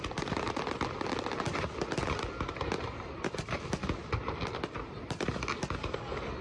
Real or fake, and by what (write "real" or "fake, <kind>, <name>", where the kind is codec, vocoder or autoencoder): real